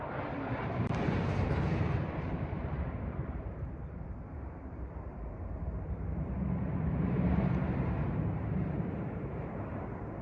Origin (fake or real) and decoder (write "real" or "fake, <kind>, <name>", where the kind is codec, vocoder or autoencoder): fake, vocoder, BigVGAN v2